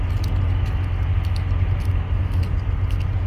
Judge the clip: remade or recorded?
recorded